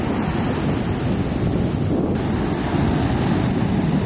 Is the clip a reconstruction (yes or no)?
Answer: no